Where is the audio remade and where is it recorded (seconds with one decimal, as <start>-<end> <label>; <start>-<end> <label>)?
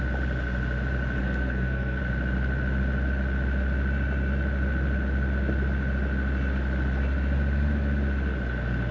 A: 0.0-1.2 recorded; 1.2-2.0 remade; 2.0-8.9 recorded